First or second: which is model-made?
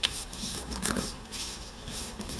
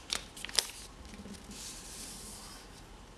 first